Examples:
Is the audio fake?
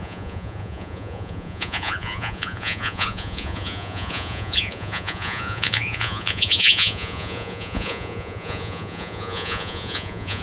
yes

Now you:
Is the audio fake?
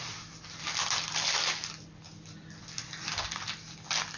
no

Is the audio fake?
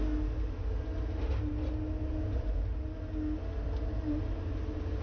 no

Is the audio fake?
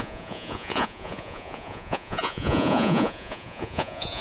yes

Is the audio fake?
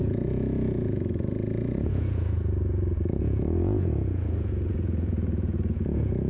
yes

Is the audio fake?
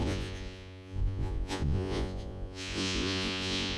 yes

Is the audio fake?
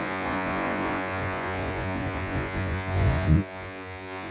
yes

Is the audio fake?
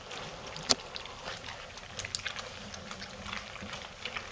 no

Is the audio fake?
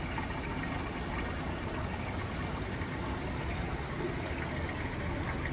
no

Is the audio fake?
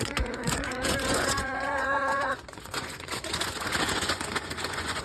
yes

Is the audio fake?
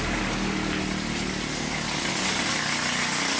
no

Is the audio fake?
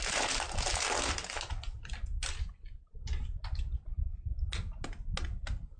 no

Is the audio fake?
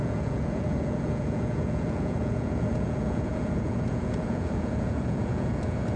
yes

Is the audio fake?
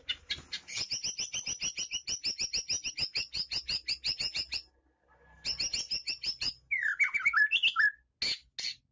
no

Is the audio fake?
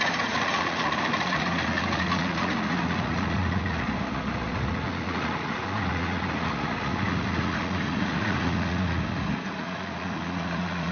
yes